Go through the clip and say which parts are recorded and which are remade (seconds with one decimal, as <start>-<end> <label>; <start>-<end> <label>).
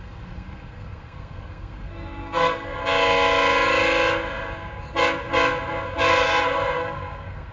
0.0-2.8 remade; 2.8-6.8 recorded; 6.8-7.5 remade